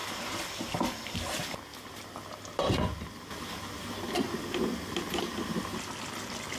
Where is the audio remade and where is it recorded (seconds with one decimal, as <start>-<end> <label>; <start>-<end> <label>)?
0.0-6.6 recorded